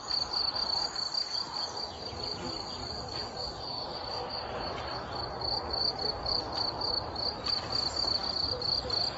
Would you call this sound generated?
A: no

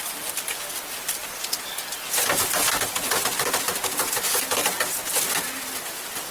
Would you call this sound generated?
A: no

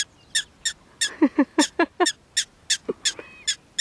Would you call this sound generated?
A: no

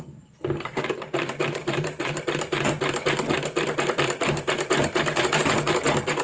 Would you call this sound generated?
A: yes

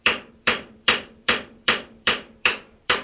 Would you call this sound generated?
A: yes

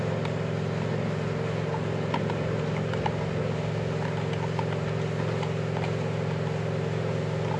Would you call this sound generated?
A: no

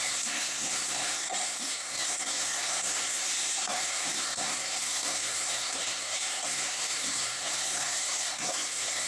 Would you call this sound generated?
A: yes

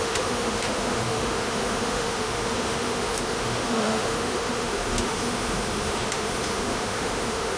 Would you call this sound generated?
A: yes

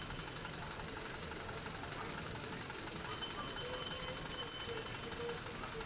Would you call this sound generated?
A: no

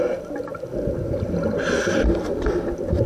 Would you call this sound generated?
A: no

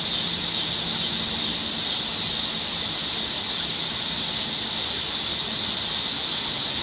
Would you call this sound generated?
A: no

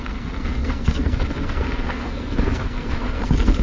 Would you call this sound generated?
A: yes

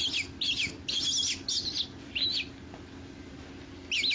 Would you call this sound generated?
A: no